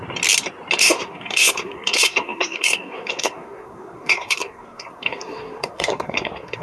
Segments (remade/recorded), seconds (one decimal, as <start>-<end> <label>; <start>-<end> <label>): 0.0-0.8 recorded; 0.8-6.6 remade